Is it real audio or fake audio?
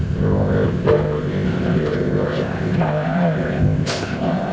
fake